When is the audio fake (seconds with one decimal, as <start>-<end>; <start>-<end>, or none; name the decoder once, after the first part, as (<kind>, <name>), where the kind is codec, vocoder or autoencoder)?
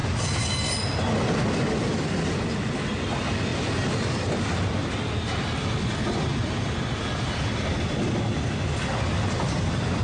none